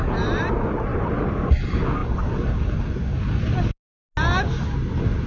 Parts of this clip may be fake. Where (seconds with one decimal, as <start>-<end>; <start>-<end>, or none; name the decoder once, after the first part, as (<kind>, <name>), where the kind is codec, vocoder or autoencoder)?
none

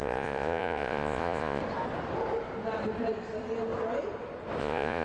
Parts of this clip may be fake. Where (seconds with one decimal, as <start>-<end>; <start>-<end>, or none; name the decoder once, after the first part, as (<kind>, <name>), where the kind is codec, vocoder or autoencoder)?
0.0-1.6 (vocoder, Vocos); 4.6-5.0

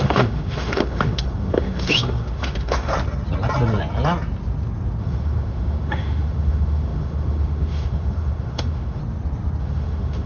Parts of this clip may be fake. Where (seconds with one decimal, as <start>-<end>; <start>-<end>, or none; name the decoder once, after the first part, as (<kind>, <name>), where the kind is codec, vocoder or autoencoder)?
0.0-2.9 (autoencoder, DAC-VAE); 5.0-9.0; 9.6-10.3

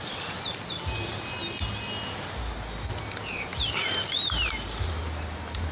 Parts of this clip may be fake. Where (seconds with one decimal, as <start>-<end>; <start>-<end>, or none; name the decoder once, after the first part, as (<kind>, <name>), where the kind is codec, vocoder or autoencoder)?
none